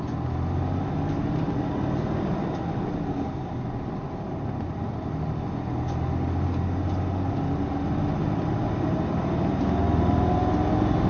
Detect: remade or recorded recorded